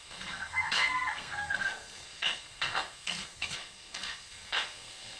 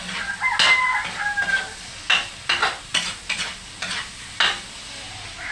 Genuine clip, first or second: second